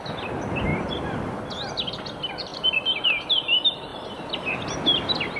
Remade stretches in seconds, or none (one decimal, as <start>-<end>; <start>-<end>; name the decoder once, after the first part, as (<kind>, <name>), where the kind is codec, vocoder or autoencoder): 0.7-1.3 (vocoder, BigVGAN v2); 2.5-3.0; 3.9-4.5